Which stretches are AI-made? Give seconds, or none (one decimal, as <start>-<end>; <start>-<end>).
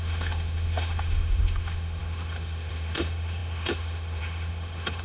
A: 0.0-5.0